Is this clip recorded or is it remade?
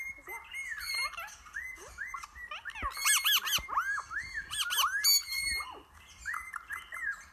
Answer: recorded